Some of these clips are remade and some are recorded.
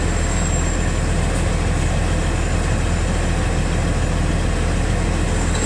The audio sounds recorded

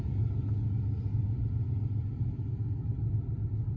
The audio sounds recorded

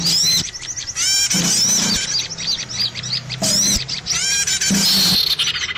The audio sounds recorded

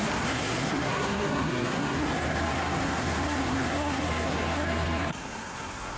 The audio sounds remade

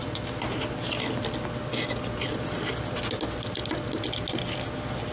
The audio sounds recorded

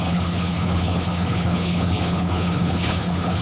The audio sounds remade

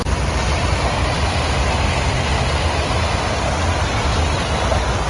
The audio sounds recorded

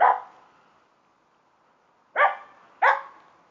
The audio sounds recorded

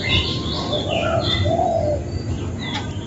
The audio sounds recorded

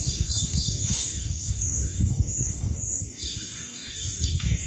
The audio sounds remade